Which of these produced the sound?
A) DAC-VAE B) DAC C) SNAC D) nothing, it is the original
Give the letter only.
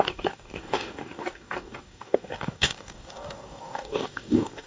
B